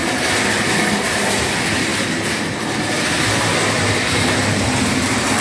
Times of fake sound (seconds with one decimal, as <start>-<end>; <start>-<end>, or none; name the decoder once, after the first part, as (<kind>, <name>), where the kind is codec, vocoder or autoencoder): 1.9-5.4 (vocoder, BigVGAN v2)